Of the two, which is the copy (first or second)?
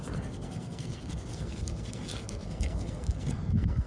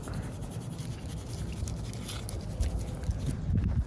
first